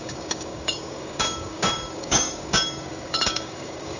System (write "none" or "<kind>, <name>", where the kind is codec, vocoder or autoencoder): codec, DAC